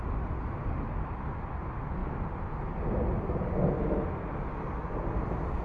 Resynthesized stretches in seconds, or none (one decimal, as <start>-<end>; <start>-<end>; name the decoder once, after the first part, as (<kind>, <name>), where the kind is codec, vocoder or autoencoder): none